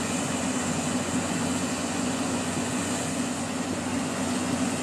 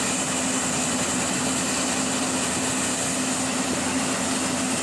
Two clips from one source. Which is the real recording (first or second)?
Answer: second